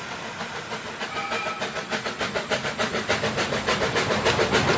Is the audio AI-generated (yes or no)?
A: no